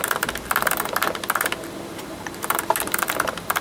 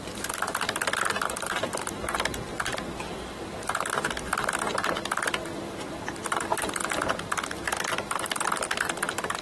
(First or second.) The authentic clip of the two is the first